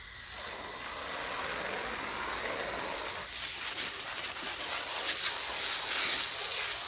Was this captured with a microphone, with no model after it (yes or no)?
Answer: yes